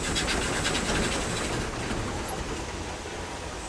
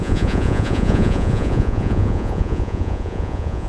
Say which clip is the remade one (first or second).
second